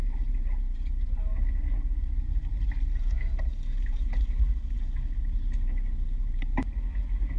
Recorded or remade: recorded